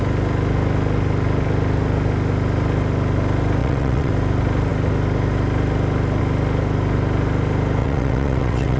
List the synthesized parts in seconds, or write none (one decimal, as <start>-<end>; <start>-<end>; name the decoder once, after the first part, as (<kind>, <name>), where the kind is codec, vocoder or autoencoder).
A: 3.6-4.1 (vocoder, WaveNeXt); 7.8-8.8